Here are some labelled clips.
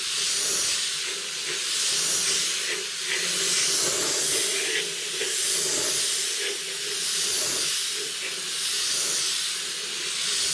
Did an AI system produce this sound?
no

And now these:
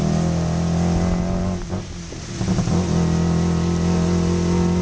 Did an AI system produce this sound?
no